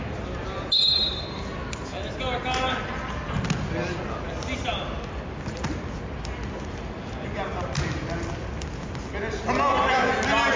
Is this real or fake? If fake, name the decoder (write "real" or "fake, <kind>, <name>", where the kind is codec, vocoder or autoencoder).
real